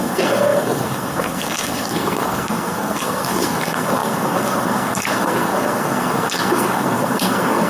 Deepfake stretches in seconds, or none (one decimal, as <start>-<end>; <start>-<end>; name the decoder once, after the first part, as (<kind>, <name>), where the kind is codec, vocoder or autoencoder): 0.0-7.7 (codec, SNAC)